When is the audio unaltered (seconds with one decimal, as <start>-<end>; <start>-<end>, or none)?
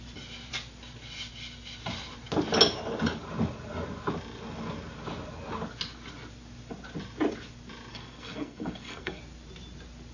0.0-7.9; 9.2-10.1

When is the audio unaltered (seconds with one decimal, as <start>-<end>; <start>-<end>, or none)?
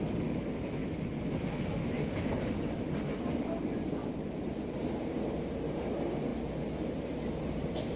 0.0-8.0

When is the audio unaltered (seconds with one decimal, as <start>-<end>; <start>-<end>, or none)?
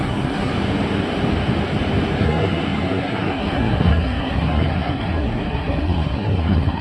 0.5-2.2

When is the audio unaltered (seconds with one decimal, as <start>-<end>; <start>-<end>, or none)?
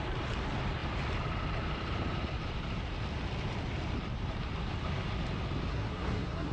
0.0-5.7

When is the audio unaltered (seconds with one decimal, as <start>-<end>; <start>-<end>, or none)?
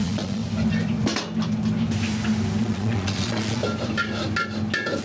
0.4-2.6; 3.6-5.0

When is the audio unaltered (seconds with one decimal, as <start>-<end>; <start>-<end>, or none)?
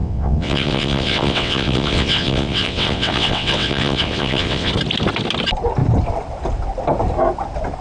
4.7-7.8